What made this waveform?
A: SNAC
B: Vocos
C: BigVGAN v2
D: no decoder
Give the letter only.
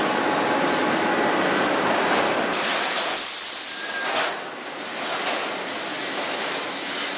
D